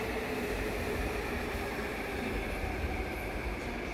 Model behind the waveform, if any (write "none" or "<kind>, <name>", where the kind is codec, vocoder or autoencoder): vocoder, BigVGAN v2